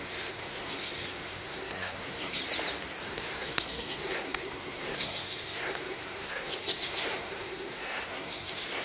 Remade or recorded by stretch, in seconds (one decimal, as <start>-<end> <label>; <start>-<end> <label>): 0.0-2.4 remade; 2.4-3.0 recorded; 3.0-8.8 remade